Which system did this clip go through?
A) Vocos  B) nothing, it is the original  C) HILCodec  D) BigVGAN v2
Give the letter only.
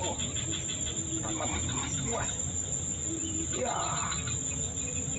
B